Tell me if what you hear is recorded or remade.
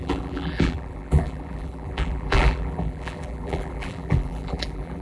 remade